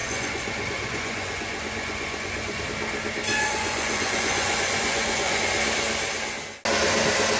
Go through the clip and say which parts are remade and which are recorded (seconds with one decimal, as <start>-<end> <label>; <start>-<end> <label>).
0.0-2.6 remade; 2.6-3.3 recorded; 3.3-5.4 remade; 5.4-7.4 recorded